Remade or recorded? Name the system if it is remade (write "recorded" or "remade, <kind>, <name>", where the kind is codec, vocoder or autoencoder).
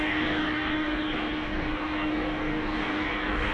remade, codec, DAC